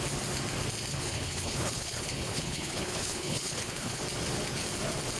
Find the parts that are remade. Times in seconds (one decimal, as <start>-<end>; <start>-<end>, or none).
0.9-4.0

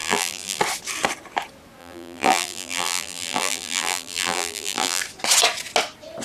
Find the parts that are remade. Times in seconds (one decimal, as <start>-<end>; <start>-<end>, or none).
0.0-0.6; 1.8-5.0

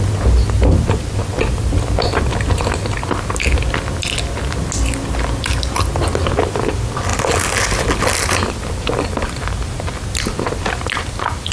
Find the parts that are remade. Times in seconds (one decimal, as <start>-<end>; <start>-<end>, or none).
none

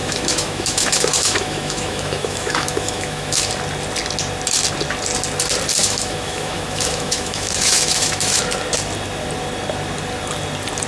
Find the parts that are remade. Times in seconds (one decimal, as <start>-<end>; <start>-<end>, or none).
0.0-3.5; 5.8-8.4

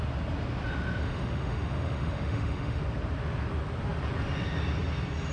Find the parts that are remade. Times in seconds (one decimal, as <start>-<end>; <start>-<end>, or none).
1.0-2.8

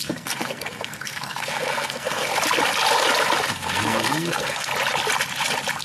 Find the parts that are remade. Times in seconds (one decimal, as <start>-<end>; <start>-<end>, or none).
0.0-2.3; 3.5-4.7

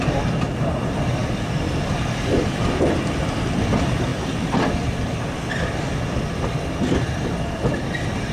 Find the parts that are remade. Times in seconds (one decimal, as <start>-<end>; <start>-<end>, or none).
1.2-1.7